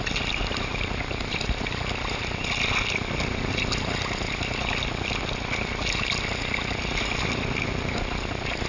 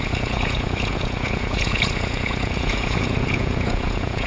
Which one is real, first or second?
first